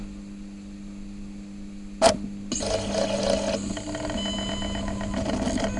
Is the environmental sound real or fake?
real